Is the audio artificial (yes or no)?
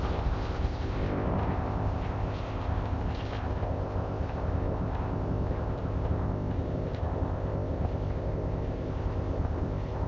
yes